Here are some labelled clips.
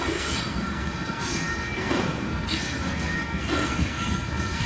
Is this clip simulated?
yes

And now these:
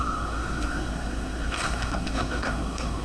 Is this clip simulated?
yes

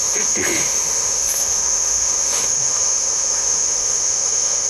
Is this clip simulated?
yes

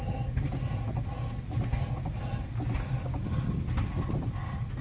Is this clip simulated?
no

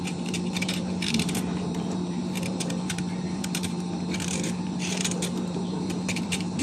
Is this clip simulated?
yes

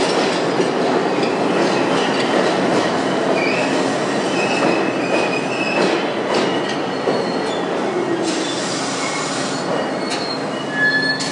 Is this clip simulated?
no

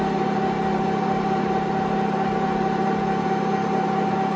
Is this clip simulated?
no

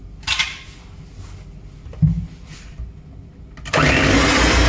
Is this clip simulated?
no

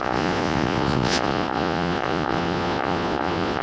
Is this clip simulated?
yes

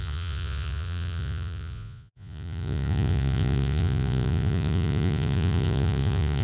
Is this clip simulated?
yes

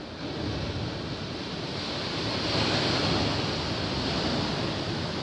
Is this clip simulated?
no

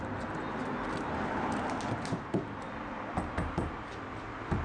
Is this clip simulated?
no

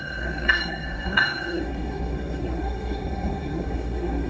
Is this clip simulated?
yes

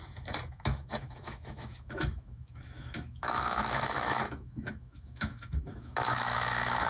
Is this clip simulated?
yes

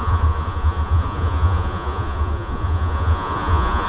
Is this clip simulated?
yes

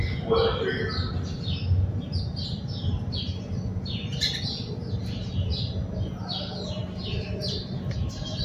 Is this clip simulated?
no